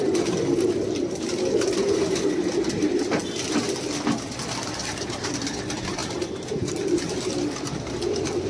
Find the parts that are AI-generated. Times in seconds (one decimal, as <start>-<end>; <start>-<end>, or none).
none